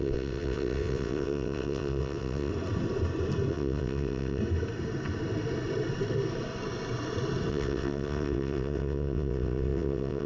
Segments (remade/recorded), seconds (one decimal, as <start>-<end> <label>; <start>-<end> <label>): 0.0-2.5 remade; 2.5-3.5 recorded; 3.5-4.4 remade; 4.4-7.5 recorded; 7.5-10.3 remade